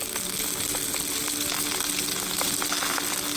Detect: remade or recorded recorded